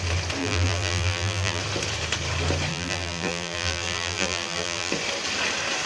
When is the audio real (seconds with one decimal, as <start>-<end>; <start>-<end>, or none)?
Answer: 0.0-0.4; 1.6-2.7; 4.9-5.9